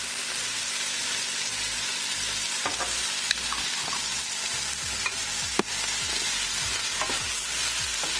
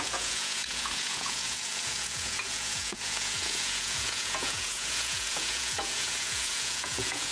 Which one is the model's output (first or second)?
second